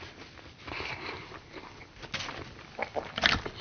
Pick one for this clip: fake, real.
real